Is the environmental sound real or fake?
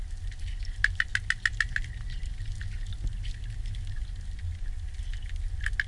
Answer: real